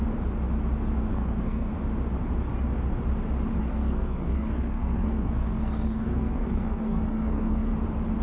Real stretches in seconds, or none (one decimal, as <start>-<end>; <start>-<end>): 0.0-1.1; 1.7-3.6; 7.7-8.2